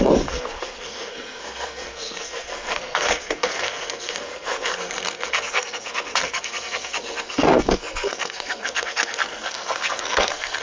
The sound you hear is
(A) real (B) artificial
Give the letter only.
B